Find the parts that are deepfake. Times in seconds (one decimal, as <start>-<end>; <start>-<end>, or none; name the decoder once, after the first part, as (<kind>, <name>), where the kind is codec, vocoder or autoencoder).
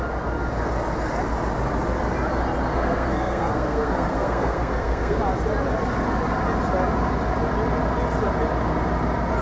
2.7-5.2 (codec, SNAC)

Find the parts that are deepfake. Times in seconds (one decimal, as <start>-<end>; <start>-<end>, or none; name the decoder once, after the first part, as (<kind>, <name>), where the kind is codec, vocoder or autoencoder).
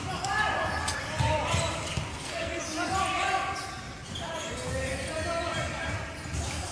2.1-2.6 (codec, SNAC)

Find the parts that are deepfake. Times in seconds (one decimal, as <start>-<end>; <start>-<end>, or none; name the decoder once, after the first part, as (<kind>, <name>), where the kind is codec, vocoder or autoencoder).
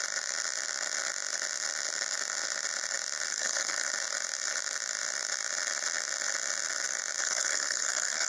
3.3-3.9 (codec, SNAC); 7.2-8.3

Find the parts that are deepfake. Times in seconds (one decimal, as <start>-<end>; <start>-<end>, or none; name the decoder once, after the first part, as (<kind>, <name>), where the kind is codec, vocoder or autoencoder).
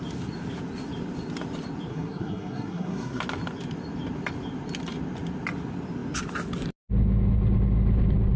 1.9-3.2 (codec, SNAC)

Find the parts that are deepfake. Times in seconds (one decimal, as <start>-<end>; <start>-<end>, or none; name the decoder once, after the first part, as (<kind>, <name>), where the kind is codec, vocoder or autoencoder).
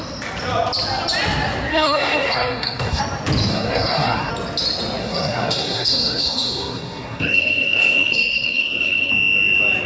1.7-3.0 (codec, SNAC); 3.5-4.3; 5.0-9.1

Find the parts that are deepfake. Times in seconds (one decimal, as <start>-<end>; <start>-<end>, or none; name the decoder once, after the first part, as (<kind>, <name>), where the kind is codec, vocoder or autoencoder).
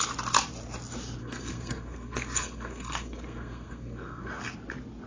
1.2-4.3 (codec, SNAC)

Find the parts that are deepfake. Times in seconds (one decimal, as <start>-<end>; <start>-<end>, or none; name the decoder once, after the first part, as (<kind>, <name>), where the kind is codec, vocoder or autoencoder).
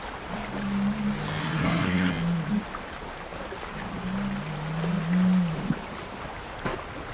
1.4-2.1 (codec, SNAC)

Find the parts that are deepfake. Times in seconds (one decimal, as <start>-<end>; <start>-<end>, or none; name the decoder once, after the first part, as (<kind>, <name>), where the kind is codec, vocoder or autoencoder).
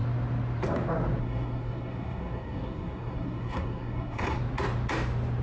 1.2-4.4 (codec, SNAC)